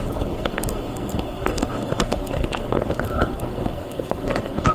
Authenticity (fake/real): fake